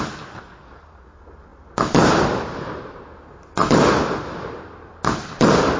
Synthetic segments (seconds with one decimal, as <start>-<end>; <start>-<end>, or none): none